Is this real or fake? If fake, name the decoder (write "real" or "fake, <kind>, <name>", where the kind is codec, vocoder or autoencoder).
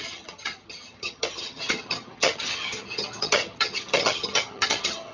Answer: fake, vocoder, HiFi-GAN